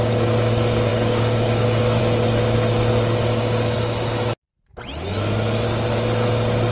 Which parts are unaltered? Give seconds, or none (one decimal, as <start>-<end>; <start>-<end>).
0.0-0.9; 2.0-6.7